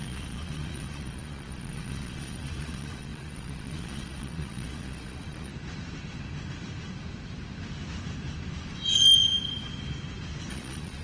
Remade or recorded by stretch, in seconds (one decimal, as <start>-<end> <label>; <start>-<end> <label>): 0.0-5.5 remade; 5.5-10.5 recorded; 10.5-11.0 remade